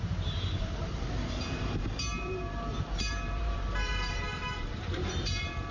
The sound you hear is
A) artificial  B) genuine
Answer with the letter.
A